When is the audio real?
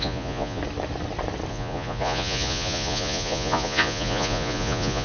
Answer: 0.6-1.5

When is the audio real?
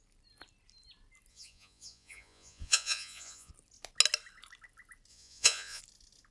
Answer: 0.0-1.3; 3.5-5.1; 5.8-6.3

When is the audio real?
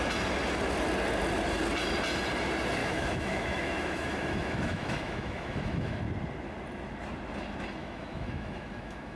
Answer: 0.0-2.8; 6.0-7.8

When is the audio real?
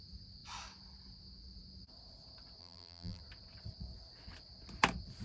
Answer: 0.0-2.6; 3.2-5.2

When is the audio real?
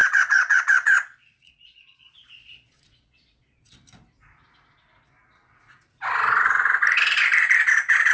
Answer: 3.6-8.1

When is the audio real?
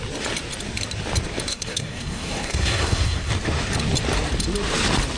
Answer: 0.0-1.5; 3.3-5.2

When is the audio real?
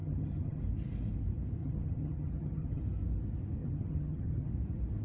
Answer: 0.6-1.6; 2.8-3.6; 4.5-5.0